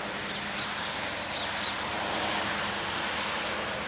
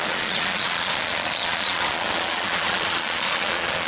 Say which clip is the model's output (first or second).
second